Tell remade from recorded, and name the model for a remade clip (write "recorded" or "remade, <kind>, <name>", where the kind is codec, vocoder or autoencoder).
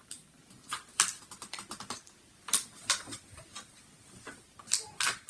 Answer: recorded